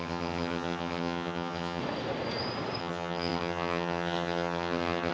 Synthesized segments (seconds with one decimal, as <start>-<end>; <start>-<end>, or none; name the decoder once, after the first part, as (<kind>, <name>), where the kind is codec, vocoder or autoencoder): 0.0-1.8 (vocoder, HiFi-GAN); 2.8-5.1